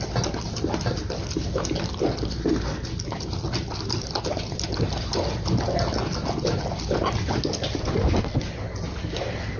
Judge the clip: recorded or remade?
recorded